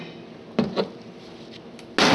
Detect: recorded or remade recorded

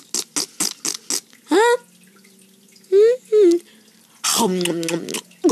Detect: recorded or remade recorded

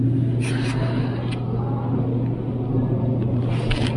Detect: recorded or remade recorded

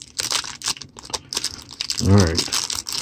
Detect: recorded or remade remade